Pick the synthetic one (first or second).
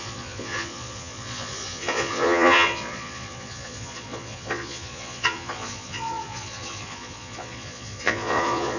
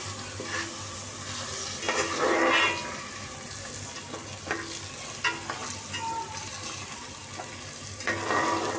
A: first